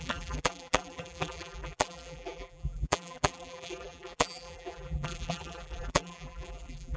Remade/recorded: remade